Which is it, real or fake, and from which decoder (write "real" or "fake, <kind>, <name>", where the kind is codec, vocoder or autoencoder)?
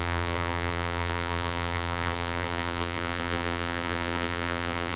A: fake, vocoder, BigVGAN v2